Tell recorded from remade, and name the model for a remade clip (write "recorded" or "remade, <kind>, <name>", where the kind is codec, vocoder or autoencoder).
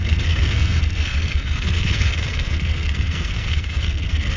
remade, codec, SNAC